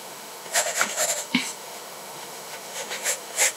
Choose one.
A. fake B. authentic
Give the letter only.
A